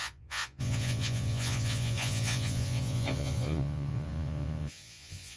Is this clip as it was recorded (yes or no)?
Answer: no